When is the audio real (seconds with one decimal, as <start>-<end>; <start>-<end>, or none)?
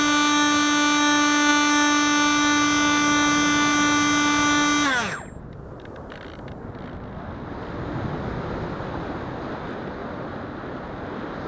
0.0-11.5